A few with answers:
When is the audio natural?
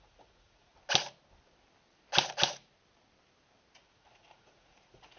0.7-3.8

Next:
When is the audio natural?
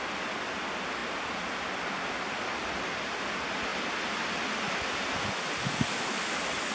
0.0-6.7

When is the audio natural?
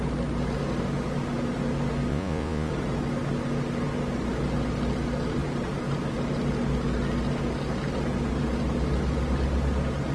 0.0-2.1; 2.7-10.1